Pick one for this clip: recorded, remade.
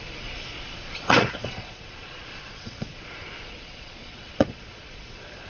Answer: remade